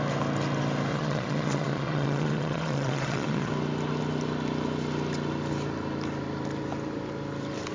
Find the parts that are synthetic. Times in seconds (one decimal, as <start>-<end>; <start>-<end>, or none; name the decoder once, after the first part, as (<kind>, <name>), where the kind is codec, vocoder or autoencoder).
0.9-3.5 (vocoder, Vocos)

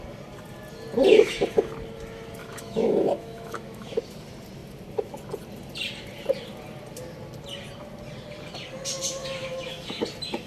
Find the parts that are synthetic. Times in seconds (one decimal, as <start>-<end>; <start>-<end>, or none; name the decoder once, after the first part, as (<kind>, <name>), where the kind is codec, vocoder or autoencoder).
1.1-1.7 (autoencoder, DAC-VAE); 2.4-4.0; 9.2-10.0